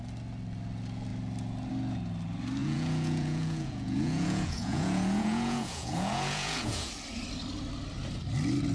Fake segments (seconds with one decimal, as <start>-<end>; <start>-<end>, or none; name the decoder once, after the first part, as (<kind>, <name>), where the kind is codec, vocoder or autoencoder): 2.6-6.9 (vocoder, Vocos)